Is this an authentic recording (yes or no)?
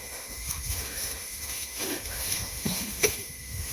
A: no